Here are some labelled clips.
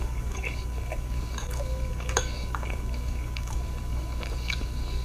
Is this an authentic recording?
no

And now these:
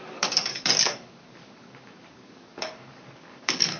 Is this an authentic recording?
no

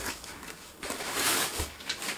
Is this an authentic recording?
no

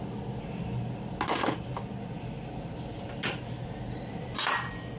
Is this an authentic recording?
yes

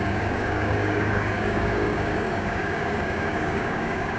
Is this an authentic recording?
no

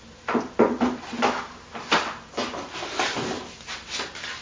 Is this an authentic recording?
yes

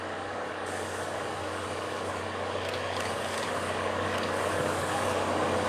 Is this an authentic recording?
no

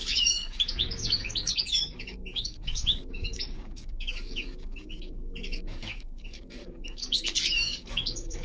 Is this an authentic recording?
no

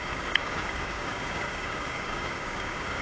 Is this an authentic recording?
no